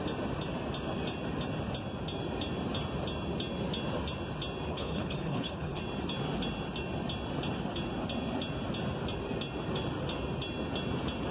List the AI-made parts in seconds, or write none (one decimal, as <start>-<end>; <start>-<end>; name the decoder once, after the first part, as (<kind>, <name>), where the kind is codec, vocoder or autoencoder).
4.7-5.8 (codec, HILCodec)